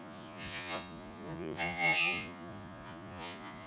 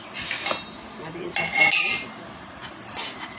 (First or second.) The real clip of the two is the second